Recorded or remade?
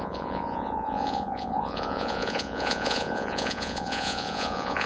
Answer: remade